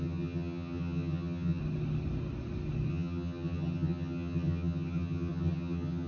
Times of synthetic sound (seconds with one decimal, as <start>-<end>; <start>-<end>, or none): 0.0-1.6; 2.9-6.1